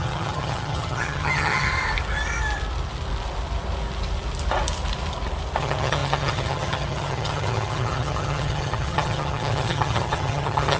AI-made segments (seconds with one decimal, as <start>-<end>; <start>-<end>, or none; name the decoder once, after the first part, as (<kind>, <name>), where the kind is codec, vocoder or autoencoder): 0.0-1.7 (vocoder, HiFi-GAN); 5.6-10.8